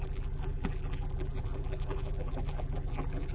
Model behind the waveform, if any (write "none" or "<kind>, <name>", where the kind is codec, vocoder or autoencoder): vocoder, BigVGAN v2